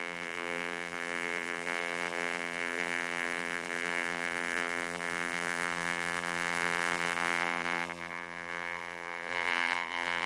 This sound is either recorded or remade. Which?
remade